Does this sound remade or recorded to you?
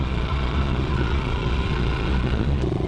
remade